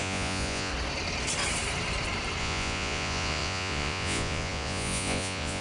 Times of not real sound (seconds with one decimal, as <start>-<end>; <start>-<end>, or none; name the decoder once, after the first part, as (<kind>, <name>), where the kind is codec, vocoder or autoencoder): 0.0-0.7 (vocoder, Vocos); 2.4-5.6